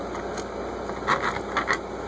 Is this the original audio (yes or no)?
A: yes